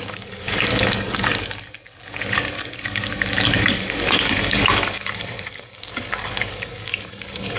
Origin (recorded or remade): remade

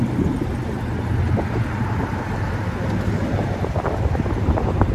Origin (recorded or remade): recorded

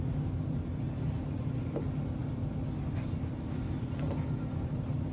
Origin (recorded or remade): recorded